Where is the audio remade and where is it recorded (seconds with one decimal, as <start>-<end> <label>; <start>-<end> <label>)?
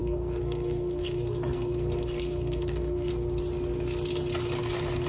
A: 0.0-3.1 remade; 3.1-5.1 recorded